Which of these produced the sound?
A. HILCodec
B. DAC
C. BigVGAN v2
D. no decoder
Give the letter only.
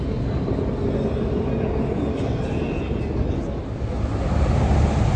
D